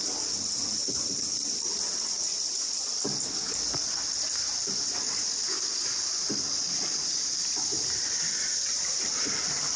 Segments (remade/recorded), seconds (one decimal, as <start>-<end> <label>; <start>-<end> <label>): 0.0-9.8 recorded